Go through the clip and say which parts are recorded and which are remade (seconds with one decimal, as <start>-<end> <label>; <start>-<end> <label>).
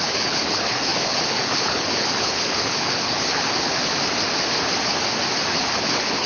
0.0-3.9 remade; 3.9-5.6 recorded; 5.6-6.3 remade